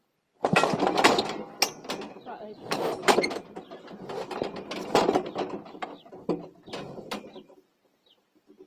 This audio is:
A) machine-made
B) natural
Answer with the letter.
B